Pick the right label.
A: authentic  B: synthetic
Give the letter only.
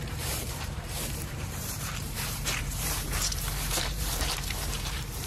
B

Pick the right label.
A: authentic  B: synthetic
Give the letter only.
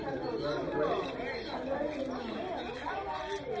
A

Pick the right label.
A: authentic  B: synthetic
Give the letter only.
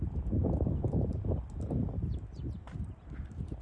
A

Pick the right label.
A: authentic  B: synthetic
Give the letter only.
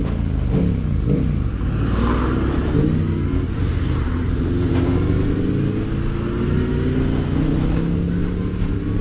A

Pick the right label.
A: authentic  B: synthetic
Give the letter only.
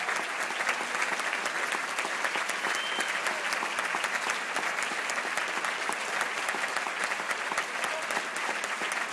A